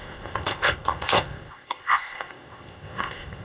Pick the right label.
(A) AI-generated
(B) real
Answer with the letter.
A